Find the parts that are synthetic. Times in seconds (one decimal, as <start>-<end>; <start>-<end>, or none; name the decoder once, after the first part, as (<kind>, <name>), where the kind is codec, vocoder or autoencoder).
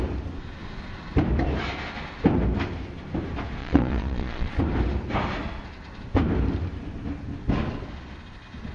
3.6-4.6 (vocoder, Vocos)